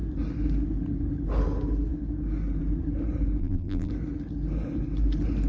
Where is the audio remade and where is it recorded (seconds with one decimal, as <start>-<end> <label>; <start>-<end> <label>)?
0.0-3.4 recorded; 3.4-3.9 remade; 3.9-5.5 recorded